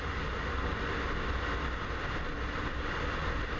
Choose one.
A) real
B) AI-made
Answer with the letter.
A